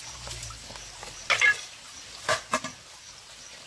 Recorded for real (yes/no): yes